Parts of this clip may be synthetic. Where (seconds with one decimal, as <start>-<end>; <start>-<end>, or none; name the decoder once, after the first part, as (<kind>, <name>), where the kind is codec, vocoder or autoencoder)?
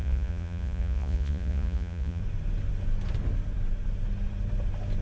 0.0-2.2 (vocoder, Vocos)